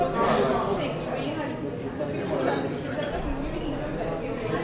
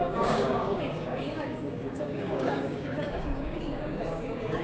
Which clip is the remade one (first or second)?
second